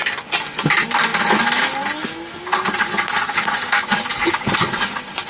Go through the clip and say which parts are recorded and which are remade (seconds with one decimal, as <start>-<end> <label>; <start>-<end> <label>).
0.0-5.3 recorded